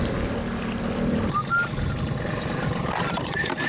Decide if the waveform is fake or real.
real